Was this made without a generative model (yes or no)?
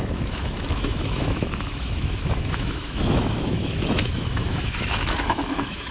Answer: no